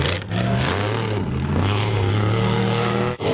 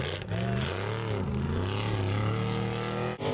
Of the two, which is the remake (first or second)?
first